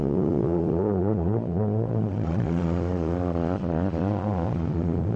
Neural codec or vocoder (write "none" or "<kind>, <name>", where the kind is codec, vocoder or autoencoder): vocoder, Vocos